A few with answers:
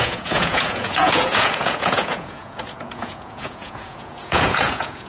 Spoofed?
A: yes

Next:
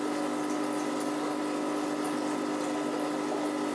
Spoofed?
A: no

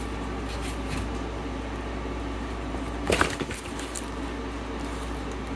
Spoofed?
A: no